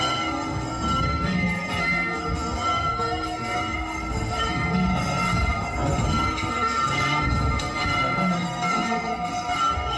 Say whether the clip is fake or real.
fake